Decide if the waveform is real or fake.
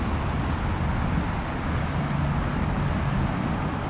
real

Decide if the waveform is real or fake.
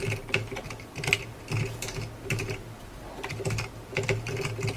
real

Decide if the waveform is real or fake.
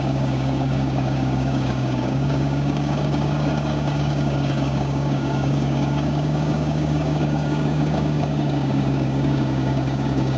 fake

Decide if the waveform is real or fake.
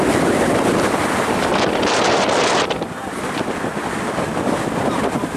real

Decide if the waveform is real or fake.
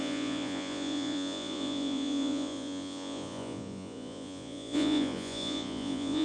fake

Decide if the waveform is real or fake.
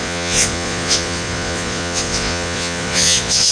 fake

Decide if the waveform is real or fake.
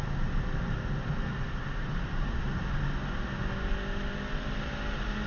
real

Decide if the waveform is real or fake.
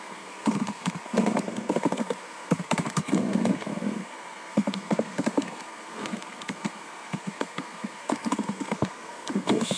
fake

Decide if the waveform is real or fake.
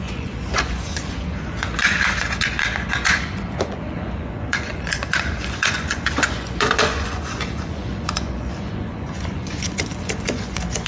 fake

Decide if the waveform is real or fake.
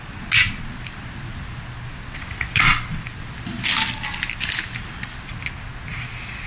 real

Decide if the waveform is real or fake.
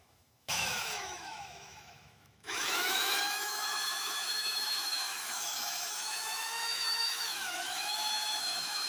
fake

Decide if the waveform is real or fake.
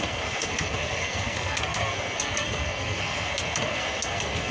fake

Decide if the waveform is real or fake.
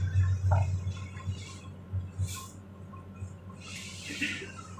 real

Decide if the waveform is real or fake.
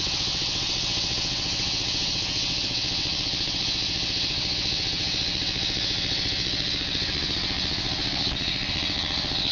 fake